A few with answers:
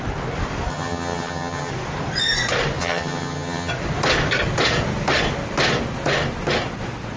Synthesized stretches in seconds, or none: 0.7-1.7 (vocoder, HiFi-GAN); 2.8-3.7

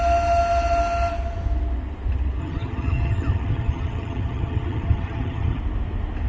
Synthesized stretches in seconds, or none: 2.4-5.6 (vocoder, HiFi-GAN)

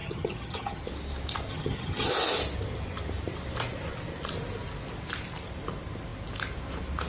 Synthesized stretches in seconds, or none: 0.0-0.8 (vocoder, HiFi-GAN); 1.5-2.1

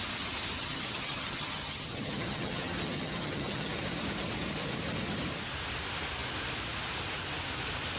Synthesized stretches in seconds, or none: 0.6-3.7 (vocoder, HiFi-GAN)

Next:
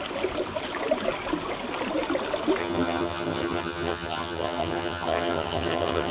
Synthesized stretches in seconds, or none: 2.6-6.1 (vocoder, HiFi-GAN)

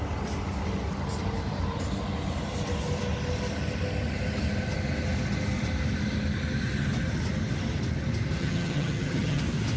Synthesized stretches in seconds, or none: 8.4-9.4 (vocoder, HiFi-GAN)

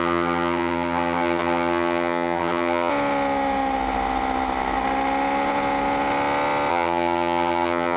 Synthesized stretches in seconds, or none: 0.0-2.9 (vocoder, HiFi-GAN); 6.7-8.0

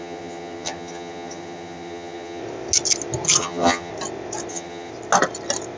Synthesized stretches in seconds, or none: 0.0-2.4 (vocoder, HiFi-GAN); 3.4-3.9; 4.5-4.9